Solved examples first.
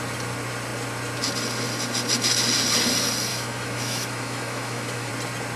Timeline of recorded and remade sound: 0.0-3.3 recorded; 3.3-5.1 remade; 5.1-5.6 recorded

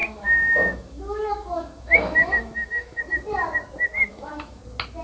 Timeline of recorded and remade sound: 0.0-3.0 remade; 3.0-4.1 recorded; 4.1-4.6 remade; 4.6-5.0 recorded

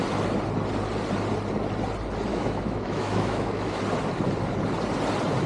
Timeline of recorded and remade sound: 0.0-2.3 recorded; 2.3-3.8 remade; 3.8-5.5 recorded

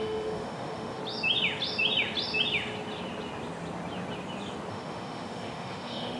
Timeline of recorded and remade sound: 0.0-1.0 remade; 1.0-4.7 recorded; 4.7-6.2 remade

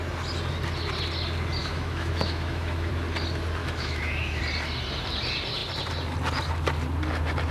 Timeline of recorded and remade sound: 0.0-1.6 recorded; 1.6-2.9 remade; 2.9-3.6 recorded; 3.6-4.4 remade; 4.4-7.5 recorded

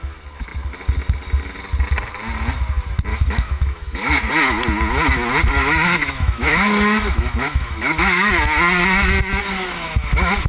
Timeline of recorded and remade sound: 0.0-3.1 recorded; 3.1-4.3 remade; 4.3-5.6 recorded; 5.6-8.3 remade; 8.3-9.6 recorded; 9.6-10.5 remade